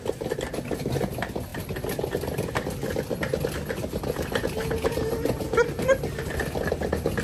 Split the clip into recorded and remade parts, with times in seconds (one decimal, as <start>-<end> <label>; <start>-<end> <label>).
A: 0.0-7.2 recorded

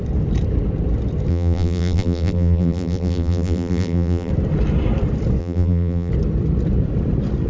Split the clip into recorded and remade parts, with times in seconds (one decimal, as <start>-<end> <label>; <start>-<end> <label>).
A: 0.0-1.3 recorded; 1.3-4.3 remade; 4.3-5.4 recorded; 5.4-6.1 remade; 6.1-7.5 recorded

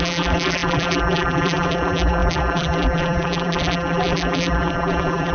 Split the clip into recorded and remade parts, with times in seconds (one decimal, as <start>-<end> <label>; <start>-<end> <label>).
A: 0.0-5.3 remade